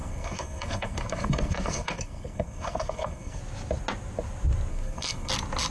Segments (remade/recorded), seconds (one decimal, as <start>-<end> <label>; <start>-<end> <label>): 0.0-3.4 remade; 3.4-4.7 recorded; 4.7-5.3 remade; 5.3-5.7 recorded